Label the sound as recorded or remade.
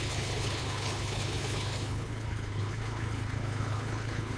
remade